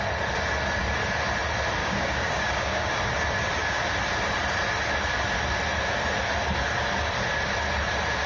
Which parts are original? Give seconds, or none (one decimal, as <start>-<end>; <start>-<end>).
0.0-1.8; 2.9-8.3